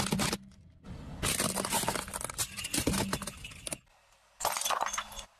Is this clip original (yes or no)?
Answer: yes